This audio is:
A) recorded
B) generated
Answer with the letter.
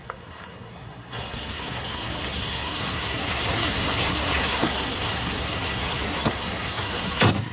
B